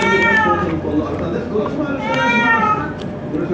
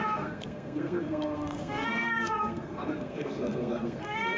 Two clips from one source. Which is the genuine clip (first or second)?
first